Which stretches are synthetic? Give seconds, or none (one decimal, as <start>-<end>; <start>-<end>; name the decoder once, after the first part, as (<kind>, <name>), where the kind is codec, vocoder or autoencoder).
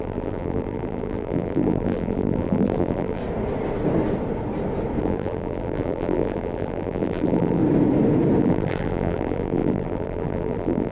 0.0-3.2 (vocoder, BigVGAN v2); 5.0-7.6; 8.4-10.9